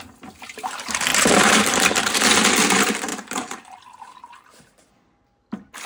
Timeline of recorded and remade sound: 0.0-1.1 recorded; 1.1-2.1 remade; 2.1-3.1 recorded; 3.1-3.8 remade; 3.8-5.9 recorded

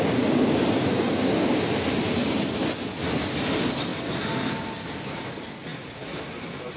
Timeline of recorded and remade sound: 0.0-0.9 recorded; 0.9-1.5 remade; 1.5-6.8 recorded

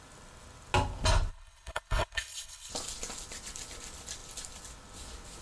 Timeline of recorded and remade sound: 0.0-1.3 recorded; 1.3-2.7 remade; 2.7-5.4 recorded

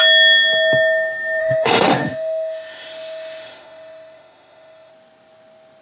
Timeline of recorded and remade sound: 0.0-1.4 recorded; 1.4-4.9 remade; 4.9-5.8 recorded

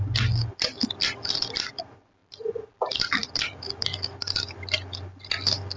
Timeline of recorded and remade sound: 0.0-5.8 recorded

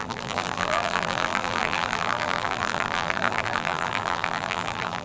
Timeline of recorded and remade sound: 0.0-5.0 remade

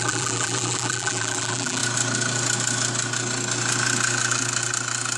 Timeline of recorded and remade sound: 0.0-1.8 remade; 1.8-5.2 recorded

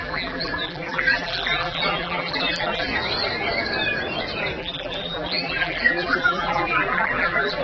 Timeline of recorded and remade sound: 0.0-2.9 remade; 2.9-4.6 recorded; 4.6-7.6 remade